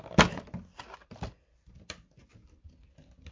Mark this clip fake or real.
real